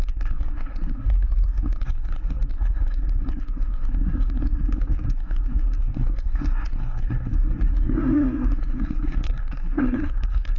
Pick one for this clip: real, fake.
fake